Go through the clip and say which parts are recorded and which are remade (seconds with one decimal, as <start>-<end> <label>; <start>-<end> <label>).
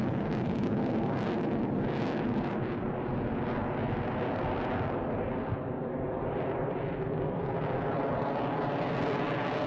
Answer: 0.0-1.2 remade; 1.2-9.7 recorded